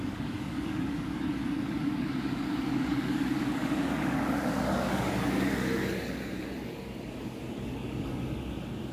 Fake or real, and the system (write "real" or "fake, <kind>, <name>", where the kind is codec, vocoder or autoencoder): fake, codec, DAC